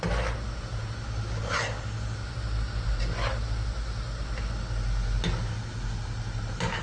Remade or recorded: recorded